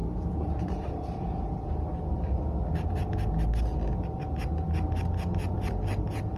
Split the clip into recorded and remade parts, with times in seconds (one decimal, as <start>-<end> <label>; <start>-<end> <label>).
0.0-2.4 remade; 2.4-6.4 recorded